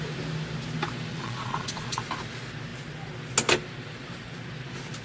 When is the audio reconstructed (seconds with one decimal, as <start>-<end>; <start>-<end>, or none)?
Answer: 1.1-2.0